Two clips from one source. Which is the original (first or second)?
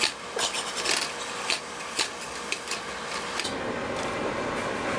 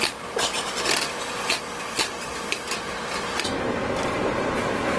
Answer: first